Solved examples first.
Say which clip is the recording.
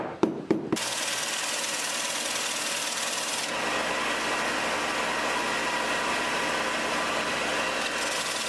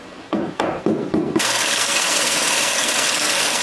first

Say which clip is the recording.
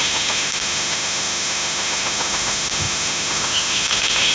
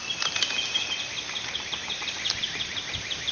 second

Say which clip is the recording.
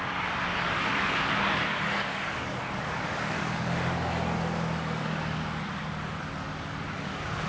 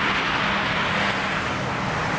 second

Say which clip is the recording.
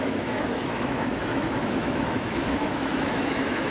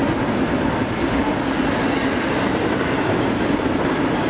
second